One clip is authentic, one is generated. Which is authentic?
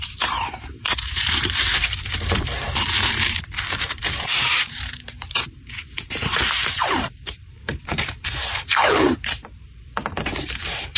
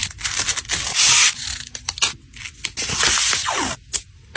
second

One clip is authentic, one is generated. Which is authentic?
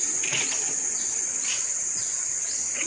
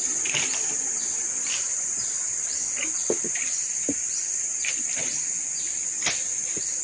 second